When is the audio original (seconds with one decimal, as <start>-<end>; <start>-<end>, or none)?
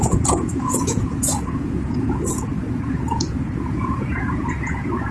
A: none